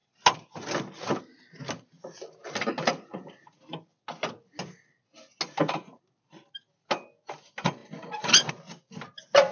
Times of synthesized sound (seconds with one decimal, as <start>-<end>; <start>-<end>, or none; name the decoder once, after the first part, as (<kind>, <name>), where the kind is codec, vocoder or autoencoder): none